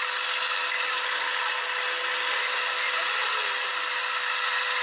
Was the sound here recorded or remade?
recorded